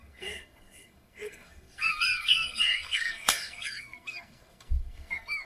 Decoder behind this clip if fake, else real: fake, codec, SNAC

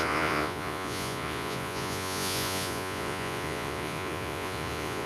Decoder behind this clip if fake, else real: fake, vocoder, Vocos